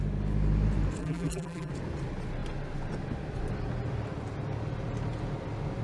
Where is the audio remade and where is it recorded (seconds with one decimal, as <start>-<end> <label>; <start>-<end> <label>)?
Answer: 0.0-1.0 recorded; 1.0-1.7 remade; 1.7-5.8 recorded

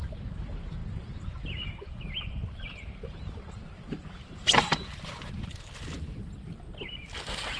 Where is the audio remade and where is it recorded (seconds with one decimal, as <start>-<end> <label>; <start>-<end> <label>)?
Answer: 0.0-0.8 recorded; 0.8-1.7 remade; 1.7-4.2 recorded; 4.2-5.3 remade; 5.3-7.6 recorded

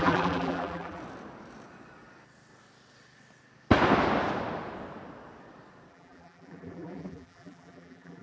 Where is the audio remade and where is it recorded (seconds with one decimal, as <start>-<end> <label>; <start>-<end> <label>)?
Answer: 0.0-1.0 remade; 1.0-5.9 recorded; 5.9-8.2 remade

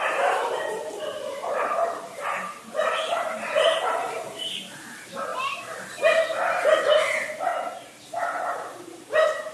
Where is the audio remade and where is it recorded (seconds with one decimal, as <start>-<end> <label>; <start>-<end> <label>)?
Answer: 0.0-5.3 remade; 5.3-6.8 recorded; 6.8-9.5 remade

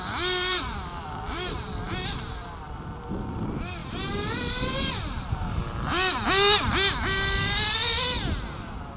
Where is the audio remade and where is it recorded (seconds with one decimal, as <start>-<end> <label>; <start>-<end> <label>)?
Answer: 0.0-9.0 recorded

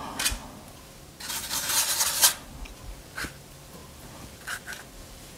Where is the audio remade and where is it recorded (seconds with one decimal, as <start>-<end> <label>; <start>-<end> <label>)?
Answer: 0.0-0.4 remade; 0.4-3.1 recorded; 3.1-5.4 remade